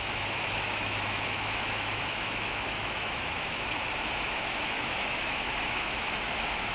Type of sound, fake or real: fake